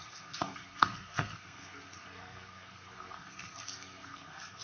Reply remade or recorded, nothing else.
remade